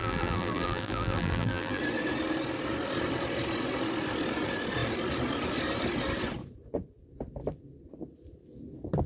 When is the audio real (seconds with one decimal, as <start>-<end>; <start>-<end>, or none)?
1.8-9.1